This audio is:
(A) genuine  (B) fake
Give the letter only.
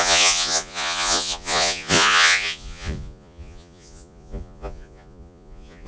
B